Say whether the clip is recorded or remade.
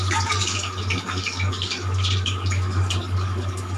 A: remade